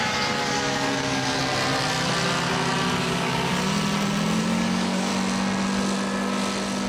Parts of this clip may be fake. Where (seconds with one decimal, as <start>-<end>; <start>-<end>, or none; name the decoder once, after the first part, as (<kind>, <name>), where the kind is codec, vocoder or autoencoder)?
0.0-1.4 (codec, DAC); 3.0-3.5; 4.4-5.1